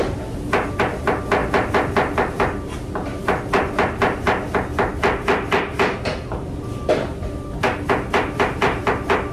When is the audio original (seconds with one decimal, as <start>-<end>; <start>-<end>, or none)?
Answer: 0.0-9.3